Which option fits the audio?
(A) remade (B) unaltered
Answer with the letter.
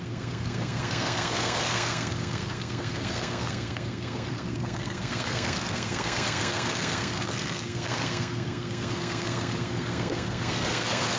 A